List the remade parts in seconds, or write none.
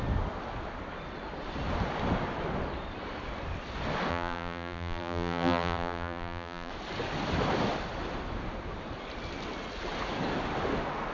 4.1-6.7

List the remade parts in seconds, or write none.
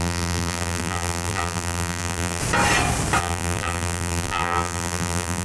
0.0-2.4; 3.2-5.4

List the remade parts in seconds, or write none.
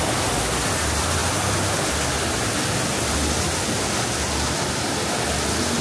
none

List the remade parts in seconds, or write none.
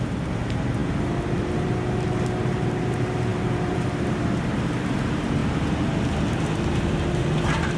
0.0-0.8; 2.4-5.4; 6.8-7.8